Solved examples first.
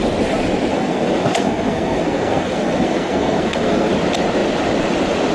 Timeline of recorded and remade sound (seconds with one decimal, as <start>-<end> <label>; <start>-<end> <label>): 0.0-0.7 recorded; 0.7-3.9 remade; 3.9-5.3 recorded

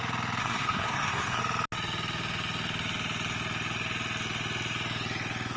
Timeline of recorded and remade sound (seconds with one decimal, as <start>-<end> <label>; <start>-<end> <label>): 0.0-0.4 recorded; 0.4-1.4 remade; 1.4-5.6 recorded

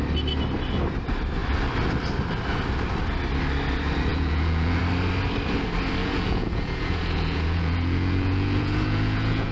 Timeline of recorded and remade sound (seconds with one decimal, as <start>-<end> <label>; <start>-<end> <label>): 0.0-4.1 recorded; 4.1-4.8 remade; 4.8-6.0 recorded; 6.0-9.5 remade

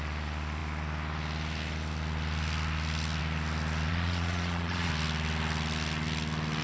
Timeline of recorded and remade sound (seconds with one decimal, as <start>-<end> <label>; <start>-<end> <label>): 0.0-3.9 recorded; 3.9-4.9 remade; 4.9-6.6 recorded

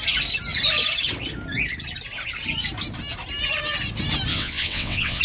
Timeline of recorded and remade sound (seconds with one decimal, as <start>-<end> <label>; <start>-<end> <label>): 0.0-4.3 recorded; 4.3-5.2 remade

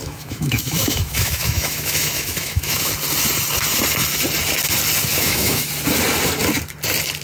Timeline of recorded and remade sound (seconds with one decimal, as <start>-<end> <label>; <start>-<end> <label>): 0.0-2.9 remade; 2.9-5.1 recorded; 5.1-5.7 remade; 5.7-7.2 recorded

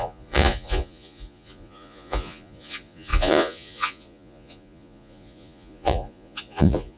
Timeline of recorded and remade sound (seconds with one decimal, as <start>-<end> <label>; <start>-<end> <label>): 0.0-7.0 remade

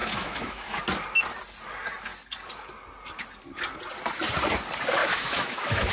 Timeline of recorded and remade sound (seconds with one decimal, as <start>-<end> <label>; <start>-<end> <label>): 0.0-0.8 remade; 0.8-5.0 recorded; 5.0-5.9 remade